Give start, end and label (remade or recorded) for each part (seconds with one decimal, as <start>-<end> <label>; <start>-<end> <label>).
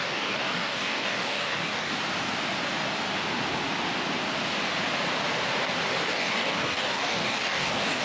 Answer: 0.0-1.9 remade; 1.9-6.1 recorded; 6.1-8.0 remade